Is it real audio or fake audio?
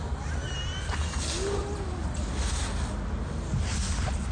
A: real